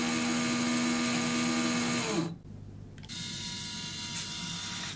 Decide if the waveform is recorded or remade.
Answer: recorded